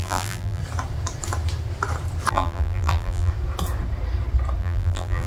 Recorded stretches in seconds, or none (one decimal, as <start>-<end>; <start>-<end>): 0.6-2.3; 3.3-4.6